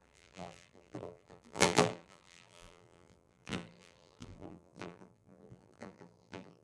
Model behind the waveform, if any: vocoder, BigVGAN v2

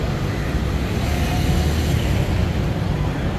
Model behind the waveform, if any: none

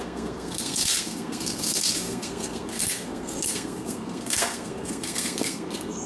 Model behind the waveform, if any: codec, SNAC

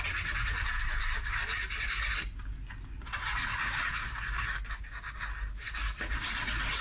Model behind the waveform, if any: none